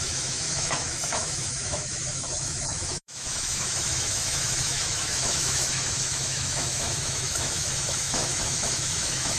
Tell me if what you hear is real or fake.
fake